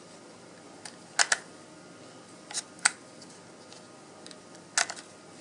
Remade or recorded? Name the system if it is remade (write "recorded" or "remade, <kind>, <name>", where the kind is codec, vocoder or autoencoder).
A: recorded